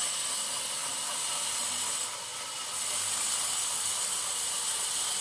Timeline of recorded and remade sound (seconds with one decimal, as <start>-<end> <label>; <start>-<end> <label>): 0.0-5.2 recorded